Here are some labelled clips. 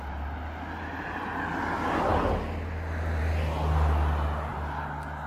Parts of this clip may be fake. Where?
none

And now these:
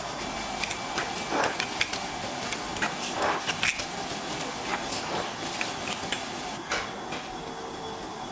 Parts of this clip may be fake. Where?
none

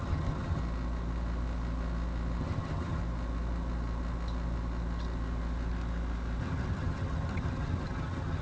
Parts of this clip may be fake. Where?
0.0-0.6 (vocoder, HiFi-GAN); 2.4-3.0; 6.4-8.4